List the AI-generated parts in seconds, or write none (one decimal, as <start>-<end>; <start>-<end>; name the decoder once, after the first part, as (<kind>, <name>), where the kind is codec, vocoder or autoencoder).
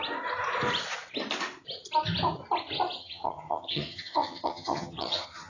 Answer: 3.0-5.5 (vocoder, HiFi-GAN)